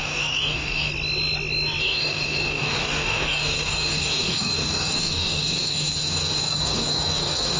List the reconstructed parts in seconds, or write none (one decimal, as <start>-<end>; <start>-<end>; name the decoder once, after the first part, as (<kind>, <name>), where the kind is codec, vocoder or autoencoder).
0.0-0.9 (codec, DAC); 1.8-7.6